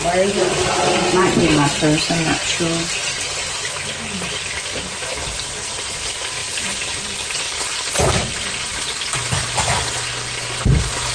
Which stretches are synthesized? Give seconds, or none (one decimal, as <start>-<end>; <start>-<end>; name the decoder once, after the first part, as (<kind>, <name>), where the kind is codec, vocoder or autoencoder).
6.4-7.6 (vocoder, BigVGAN v2); 8.7-9.3

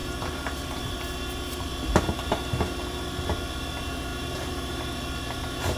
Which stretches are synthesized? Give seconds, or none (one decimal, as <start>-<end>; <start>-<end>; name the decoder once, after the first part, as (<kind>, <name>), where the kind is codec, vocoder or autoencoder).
0.0-0.9 (vocoder, BigVGAN v2); 4.1-4.7